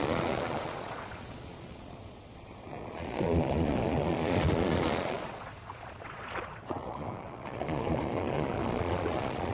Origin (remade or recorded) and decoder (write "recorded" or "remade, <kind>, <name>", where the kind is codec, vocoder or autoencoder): remade, vocoder, Vocos